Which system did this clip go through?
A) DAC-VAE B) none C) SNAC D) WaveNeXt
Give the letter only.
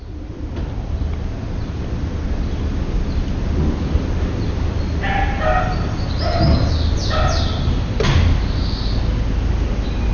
B